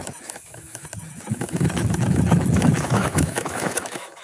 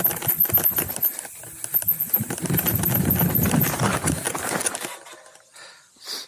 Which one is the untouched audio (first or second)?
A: second